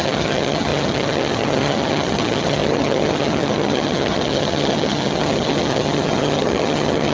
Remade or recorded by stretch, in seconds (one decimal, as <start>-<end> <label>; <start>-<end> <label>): 0.0-7.1 remade